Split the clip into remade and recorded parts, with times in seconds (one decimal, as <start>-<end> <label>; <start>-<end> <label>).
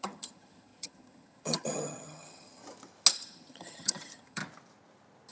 0.0-2.6 remade; 2.6-3.1 recorded; 3.1-4.4 remade; 4.4-5.3 recorded